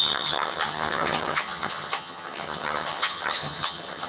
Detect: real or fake fake